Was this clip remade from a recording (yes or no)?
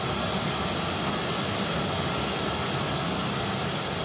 no